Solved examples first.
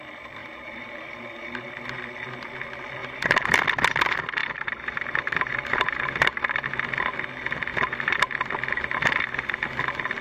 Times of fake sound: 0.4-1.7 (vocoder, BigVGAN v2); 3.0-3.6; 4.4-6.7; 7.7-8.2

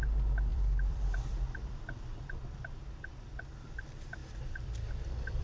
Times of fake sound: 0.5-3.7 (vocoder, BigVGAN v2)

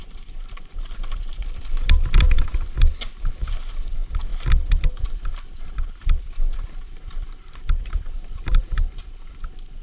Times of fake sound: 0.0-2.9 (vocoder, BigVGAN v2); 4.3-8.6

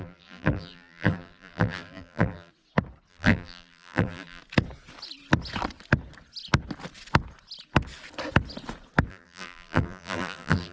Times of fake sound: 0.0-2.5 (vocoder, BigVGAN v2); 3.1-4.4; 9.1-10.7

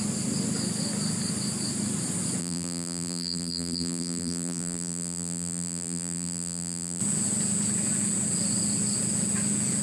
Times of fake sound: 2.4-7.0 (vocoder, BigVGAN v2)

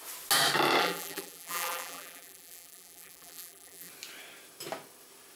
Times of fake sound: 0.8-3.9 (vocoder, BigVGAN v2)